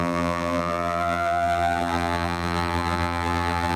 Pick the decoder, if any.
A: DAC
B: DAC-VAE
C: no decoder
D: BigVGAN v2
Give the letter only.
D